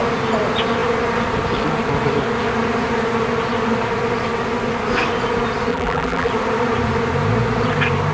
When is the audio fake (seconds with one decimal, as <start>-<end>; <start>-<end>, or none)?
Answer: 5.7-6.3